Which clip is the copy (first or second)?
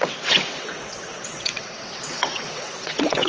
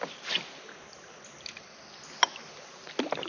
first